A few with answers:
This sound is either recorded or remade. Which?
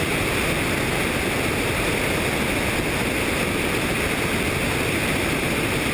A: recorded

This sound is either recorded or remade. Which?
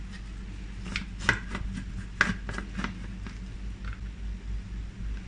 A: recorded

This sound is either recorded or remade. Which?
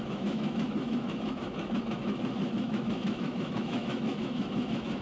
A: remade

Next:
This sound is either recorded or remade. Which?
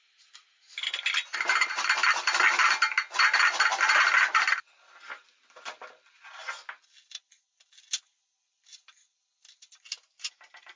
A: recorded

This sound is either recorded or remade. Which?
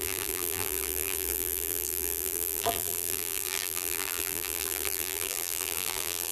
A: remade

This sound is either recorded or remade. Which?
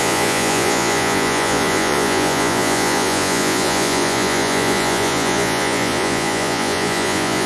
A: remade